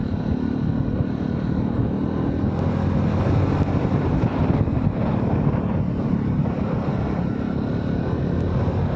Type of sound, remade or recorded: recorded